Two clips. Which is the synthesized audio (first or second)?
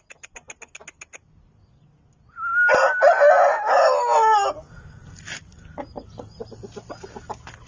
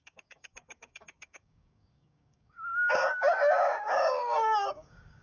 second